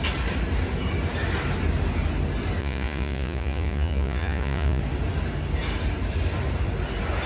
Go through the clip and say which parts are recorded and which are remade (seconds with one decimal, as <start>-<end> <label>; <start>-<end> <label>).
0.0-2.6 recorded; 2.6-4.8 remade; 4.8-7.3 recorded